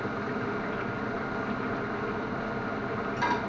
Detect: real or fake real